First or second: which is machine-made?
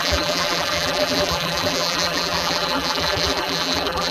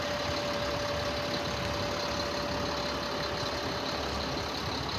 first